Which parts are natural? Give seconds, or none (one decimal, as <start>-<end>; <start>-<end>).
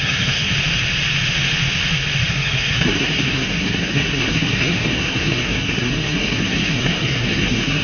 0.5-2.3